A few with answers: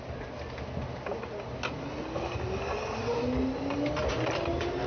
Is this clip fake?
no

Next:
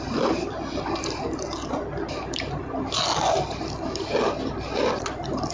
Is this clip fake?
no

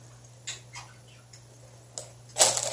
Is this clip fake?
no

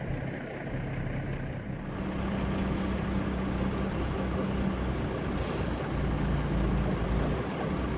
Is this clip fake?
no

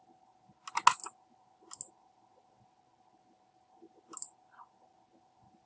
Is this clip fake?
no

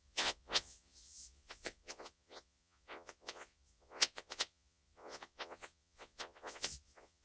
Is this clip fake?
yes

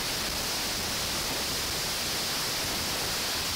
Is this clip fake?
no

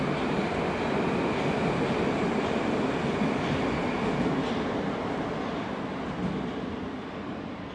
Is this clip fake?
no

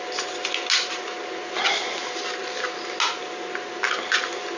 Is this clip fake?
no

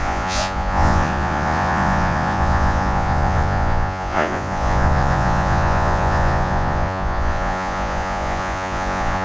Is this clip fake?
yes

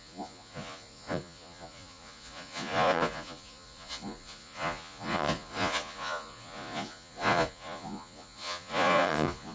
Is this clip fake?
yes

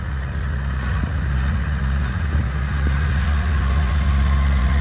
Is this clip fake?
yes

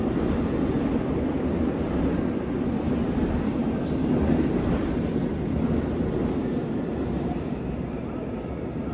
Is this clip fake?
no